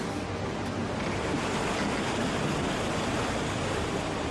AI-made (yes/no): no